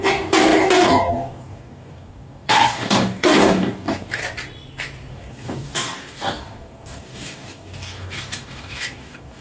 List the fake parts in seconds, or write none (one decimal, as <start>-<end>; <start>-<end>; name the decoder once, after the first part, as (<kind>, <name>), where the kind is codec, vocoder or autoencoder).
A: 0.0-4.2 (codec, DAC); 5.1-9.4